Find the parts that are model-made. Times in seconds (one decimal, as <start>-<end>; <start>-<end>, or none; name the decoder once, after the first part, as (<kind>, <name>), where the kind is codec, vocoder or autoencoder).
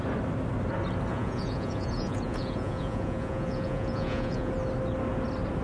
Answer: 1.1-4.5 (vocoder, Vocos)